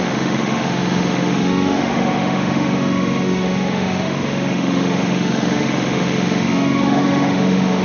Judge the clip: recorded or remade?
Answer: remade